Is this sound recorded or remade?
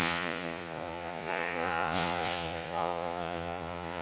remade